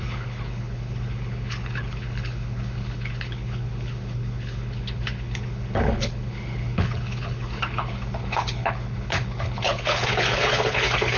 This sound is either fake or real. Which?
fake